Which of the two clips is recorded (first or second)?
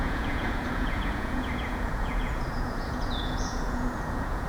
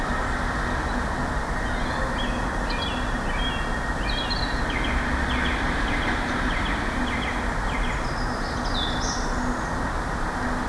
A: second